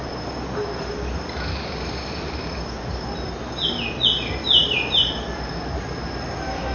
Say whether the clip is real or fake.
real